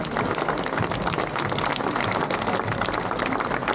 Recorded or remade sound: recorded